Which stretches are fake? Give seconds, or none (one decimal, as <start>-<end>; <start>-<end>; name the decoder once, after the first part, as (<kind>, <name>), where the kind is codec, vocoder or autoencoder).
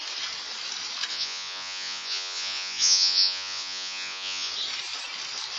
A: 1.1-4.5 (vocoder, Vocos)